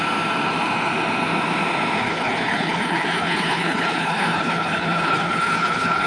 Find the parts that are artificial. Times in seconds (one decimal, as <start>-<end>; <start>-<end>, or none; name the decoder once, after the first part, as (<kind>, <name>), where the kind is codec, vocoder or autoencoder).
2.0-6.1 (codec, HILCodec)